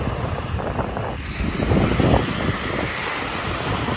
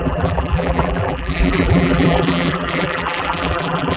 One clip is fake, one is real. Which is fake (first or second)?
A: second